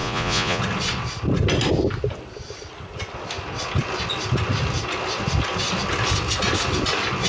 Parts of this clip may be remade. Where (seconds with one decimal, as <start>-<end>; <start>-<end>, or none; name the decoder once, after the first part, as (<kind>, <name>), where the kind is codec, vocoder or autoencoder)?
0.0-0.6 (vocoder, Vocos)